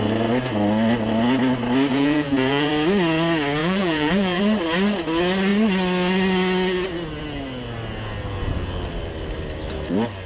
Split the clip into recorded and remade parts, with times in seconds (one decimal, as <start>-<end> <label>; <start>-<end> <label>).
0.0-1.9 recorded; 1.9-2.7 remade; 2.7-3.6 recorded; 3.6-4.4 remade; 4.4-10.3 recorded

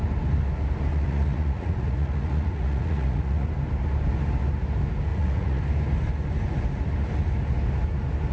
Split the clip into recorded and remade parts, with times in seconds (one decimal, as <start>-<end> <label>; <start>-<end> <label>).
0.0-0.9 recorded; 0.9-3.5 remade; 3.5-5.1 recorded; 5.1-5.6 remade; 5.6-8.3 recorded

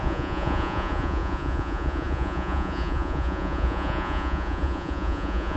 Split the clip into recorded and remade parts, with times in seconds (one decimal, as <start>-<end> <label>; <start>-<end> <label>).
0.0-5.6 remade

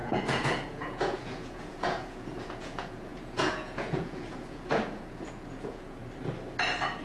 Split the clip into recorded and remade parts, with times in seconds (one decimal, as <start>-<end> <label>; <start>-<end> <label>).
0.0-6.0 remade; 6.0-7.0 recorded

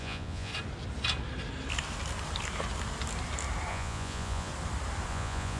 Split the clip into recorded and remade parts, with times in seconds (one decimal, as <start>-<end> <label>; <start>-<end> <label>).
0.0-0.5 remade; 0.5-3.7 recorded; 3.7-4.5 remade; 4.5-5.1 recorded; 5.1-5.6 remade